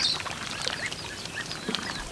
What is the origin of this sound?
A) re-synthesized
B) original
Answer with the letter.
A